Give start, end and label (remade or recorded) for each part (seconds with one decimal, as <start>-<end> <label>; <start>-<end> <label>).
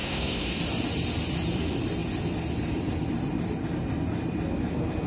0.0-0.6 remade; 0.6-5.1 recorded